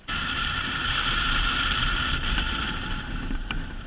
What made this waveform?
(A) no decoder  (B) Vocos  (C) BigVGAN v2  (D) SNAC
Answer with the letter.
C